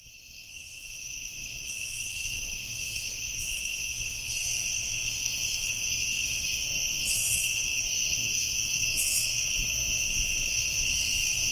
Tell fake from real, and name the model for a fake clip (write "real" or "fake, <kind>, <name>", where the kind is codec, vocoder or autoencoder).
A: fake, codec, SNAC